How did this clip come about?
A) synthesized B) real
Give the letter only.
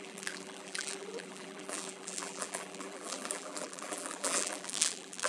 A